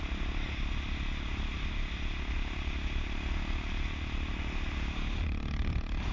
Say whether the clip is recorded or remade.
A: recorded